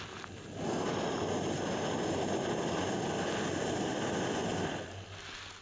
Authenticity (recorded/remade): recorded